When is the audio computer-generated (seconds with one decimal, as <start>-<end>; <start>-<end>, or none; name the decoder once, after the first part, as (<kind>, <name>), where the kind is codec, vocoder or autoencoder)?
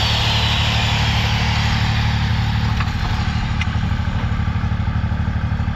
none